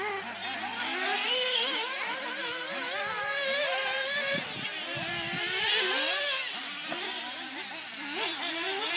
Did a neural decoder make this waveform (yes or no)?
no